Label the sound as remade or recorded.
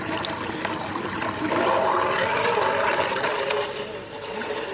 recorded